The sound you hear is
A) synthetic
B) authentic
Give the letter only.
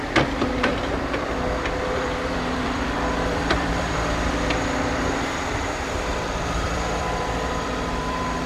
A